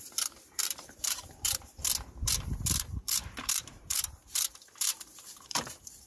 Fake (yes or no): yes